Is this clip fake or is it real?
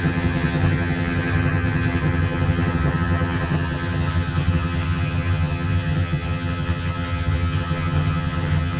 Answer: fake